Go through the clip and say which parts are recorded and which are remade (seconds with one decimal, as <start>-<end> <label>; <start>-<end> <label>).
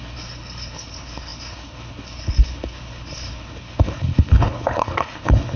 0.0-5.6 remade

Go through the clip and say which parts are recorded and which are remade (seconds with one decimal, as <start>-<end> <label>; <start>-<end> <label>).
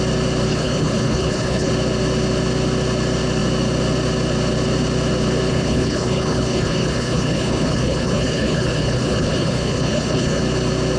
0.0-0.5 recorded; 0.5-1.7 remade; 1.7-5.5 recorded; 5.5-10.4 remade; 10.4-11.0 recorded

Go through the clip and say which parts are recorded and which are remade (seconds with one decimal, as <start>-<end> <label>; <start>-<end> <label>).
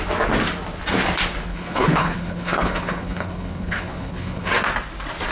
0.0-1.5 recorded; 1.5-4.5 remade; 4.5-5.3 recorded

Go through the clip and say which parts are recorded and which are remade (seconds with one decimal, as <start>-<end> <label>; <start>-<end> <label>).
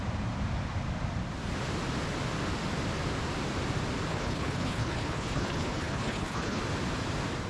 0.0-4.1 recorded; 4.1-6.6 remade; 6.6-7.5 recorded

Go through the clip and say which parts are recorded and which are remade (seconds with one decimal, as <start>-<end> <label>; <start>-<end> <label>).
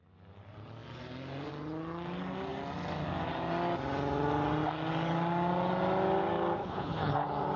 0.0-6.6 recorded; 6.6-7.1 remade; 7.1-7.6 recorded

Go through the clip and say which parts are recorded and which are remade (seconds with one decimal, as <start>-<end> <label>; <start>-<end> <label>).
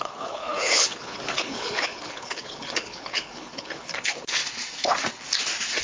0.0-4.4 remade; 4.4-5.8 recorded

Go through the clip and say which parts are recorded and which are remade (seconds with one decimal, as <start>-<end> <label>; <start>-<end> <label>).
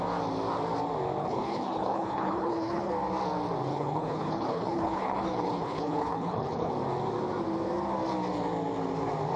0.0-1.2 recorded; 1.2-2.9 remade; 2.9-3.7 recorded; 3.7-6.7 remade; 6.7-9.4 recorded